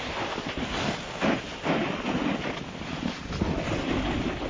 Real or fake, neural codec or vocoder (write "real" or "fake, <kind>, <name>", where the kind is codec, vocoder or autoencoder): real